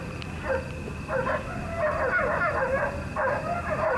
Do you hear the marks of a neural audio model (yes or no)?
no